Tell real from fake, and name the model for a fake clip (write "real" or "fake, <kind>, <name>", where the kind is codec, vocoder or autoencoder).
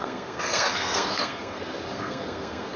fake, codec, SNAC